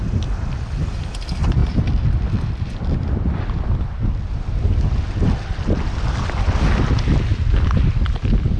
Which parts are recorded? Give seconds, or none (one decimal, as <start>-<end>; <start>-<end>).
0.0-1.6; 3.8-8.6